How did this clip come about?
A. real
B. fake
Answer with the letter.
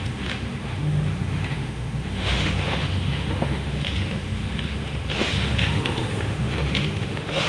B